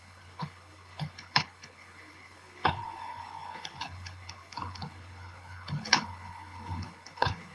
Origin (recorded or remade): remade